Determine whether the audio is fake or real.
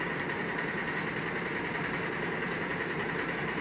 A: real